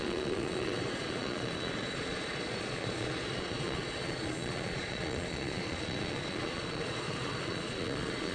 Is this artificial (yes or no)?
yes